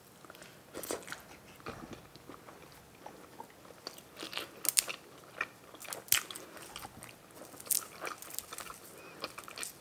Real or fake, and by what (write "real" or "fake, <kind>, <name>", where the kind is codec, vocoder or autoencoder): real